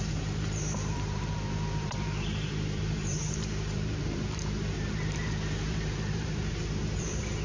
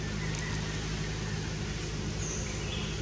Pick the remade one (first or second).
first